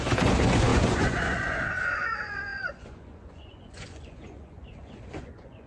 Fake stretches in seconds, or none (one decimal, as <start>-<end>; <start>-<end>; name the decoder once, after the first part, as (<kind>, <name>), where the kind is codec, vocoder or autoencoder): 0.0-5.7 (vocoder, Vocos)